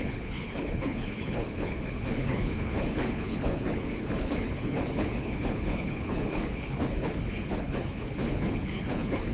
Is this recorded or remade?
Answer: remade